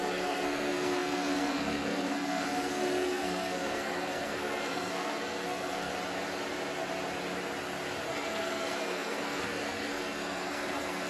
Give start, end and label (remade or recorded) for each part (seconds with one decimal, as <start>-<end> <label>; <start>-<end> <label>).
0.0-5.9 remade; 5.9-8.1 recorded; 8.1-11.1 remade